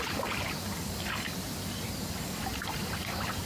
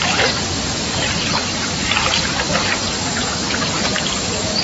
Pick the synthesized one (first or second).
second